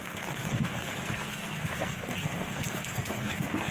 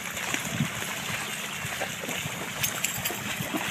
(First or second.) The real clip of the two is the second